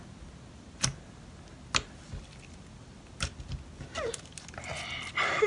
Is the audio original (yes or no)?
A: yes